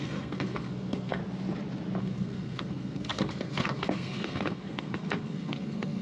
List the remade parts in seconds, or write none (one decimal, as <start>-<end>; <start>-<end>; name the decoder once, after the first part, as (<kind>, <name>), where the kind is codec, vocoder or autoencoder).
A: 0.0-1.2 (codec, SNAC); 2.0-6.0